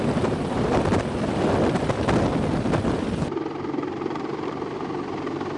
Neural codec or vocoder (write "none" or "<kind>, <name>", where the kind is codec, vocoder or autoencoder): none